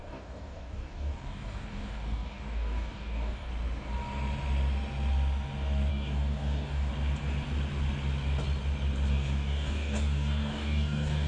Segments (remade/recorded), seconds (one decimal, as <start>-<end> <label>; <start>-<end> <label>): 0.0-3.5 remade; 3.5-5.9 recorded; 5.9-6.9 remade; 6.9-9.1 recorded; 9.1-11.3 remade